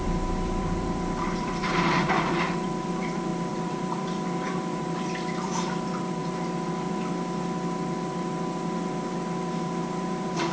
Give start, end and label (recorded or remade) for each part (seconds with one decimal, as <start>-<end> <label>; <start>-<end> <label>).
0.0-6.2 remade; 6.2-9.6 recorded; 9.6-10.5 remade